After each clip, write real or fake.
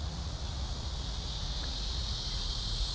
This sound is fake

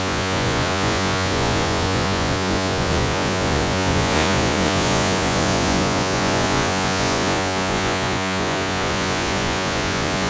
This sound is fake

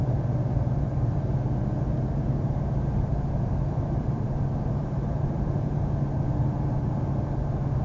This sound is fake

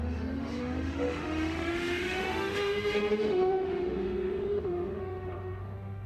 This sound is fake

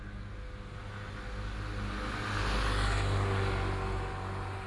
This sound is real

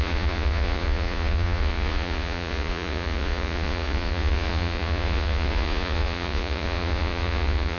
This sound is fake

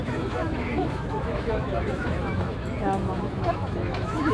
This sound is fake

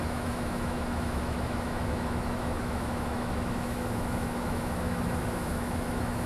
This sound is fake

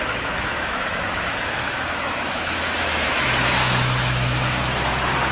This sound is fake